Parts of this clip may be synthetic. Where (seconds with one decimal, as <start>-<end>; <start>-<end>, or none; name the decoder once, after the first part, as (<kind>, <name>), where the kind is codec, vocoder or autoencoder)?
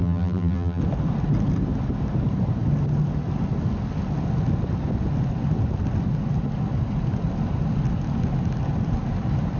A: 0.0-0.8 (vocoder, BigVGAN v2)